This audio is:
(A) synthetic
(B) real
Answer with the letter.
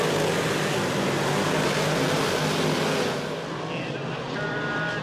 B